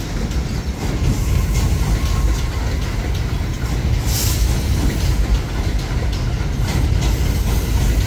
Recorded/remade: recorded